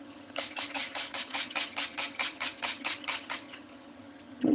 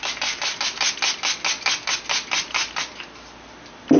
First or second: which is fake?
first